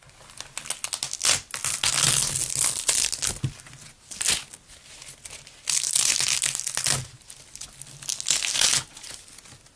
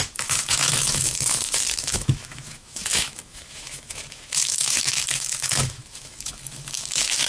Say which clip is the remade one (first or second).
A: second